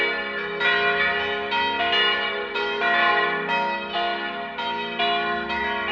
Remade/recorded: recorded